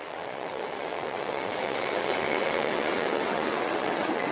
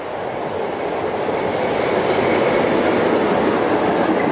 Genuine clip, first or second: second